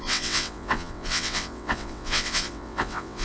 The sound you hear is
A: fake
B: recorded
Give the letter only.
A